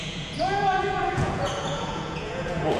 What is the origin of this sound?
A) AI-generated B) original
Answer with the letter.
A